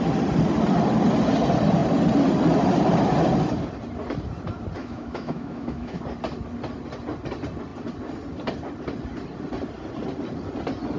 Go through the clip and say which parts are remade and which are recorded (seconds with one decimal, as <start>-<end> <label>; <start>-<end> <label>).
0.0-4.8 recorded; 4.8-6.0 remade; 6.0-11.0 recorded